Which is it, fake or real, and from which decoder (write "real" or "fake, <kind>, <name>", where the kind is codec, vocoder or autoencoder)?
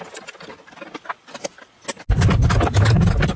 real